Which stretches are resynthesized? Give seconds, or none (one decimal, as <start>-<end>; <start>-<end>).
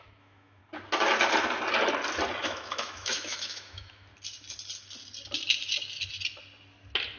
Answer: 0.0-0.6; 2.4-4.1